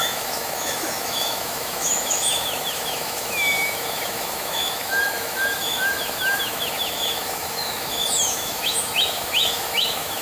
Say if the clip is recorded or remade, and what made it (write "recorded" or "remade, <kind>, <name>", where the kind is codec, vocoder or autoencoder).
remade, autoencoder, DAC-VAE